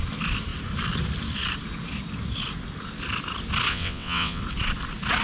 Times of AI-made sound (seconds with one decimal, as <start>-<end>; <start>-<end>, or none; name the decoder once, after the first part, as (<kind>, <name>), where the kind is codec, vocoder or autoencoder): 3.7-4.4 (vocoder, WaveNeXt)